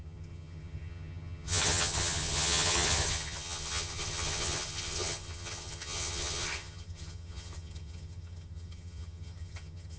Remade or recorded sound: remade